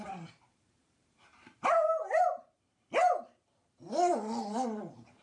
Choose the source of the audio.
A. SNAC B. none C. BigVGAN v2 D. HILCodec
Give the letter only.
C